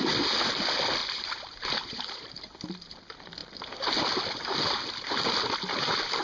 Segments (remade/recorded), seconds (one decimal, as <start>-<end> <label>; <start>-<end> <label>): 0.0-1.0 recorded; 1.0-2.3 remade; 2.3-6.2 recorded